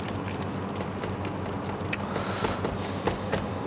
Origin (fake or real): real